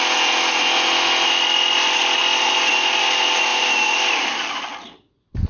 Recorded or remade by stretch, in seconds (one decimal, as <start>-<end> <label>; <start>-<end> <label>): 0.0-3.5 recorded; 3.5-4.3 remade; 4.3-5.5 recorded